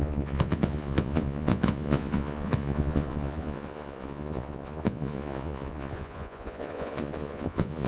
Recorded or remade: remade